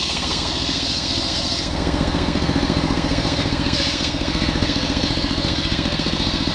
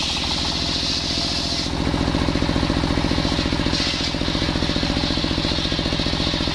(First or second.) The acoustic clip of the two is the second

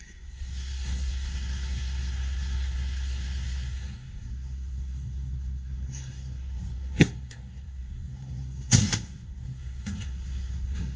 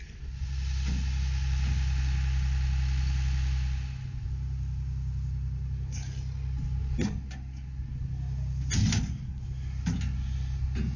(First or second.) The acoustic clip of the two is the second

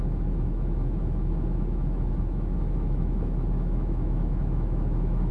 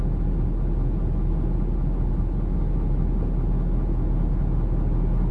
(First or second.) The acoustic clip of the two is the second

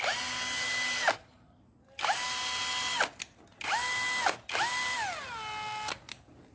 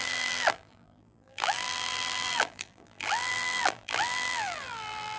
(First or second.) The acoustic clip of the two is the first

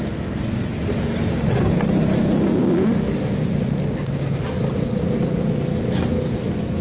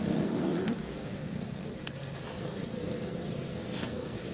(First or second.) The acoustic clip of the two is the first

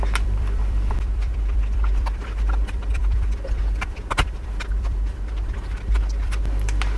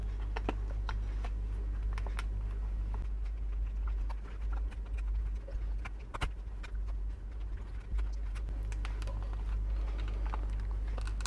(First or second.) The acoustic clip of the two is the second